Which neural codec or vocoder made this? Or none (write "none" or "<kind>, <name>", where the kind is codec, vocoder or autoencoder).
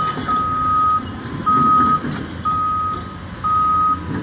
none